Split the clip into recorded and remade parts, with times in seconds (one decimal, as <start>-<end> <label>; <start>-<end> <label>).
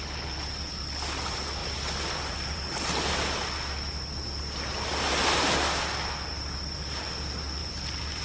0.0-1.6 recorded; 1.6-4.0 remade; 4.0-7.6 recorded; 7.6-8.2 remade